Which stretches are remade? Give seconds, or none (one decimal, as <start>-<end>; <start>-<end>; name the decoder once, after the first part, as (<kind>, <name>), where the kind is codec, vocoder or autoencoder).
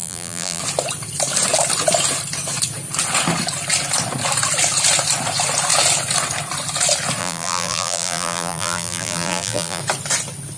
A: 0.0-0.6 (vocoder, BigVGAN v2); 7.2-9.8